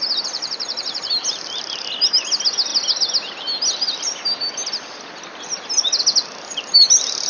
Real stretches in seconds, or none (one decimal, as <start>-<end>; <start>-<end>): 0.0-7.3